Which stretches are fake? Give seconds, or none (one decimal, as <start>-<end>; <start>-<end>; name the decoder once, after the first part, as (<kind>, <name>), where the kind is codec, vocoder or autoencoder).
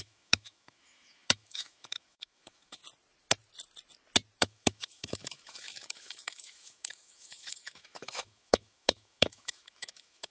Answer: 0.0-2.8 (autoencoder, DAC-VAE); 4.4-10.3